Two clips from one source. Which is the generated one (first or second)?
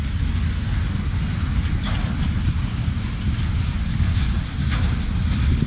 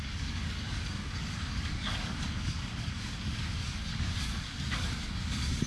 second